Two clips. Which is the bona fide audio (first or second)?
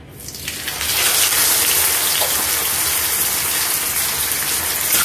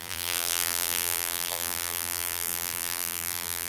first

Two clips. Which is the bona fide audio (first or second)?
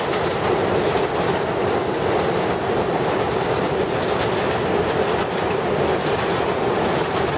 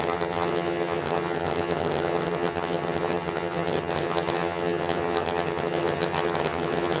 first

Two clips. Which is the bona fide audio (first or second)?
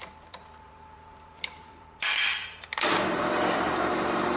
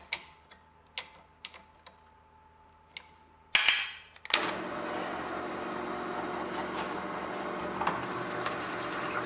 second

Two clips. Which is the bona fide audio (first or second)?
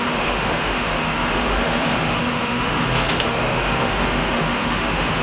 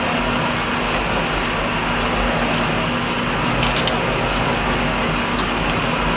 second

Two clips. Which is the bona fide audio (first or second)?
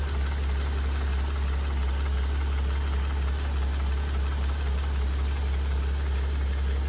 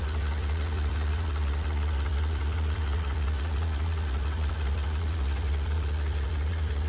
first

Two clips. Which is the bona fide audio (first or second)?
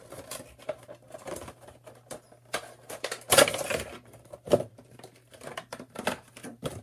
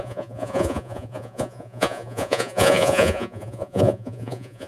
first